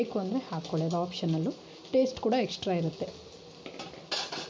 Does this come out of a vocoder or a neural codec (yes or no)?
no